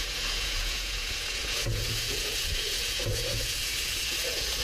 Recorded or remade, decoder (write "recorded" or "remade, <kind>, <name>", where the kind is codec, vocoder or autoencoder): remade, vocoder, Vocos